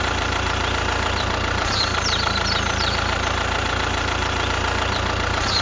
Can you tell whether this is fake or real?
fake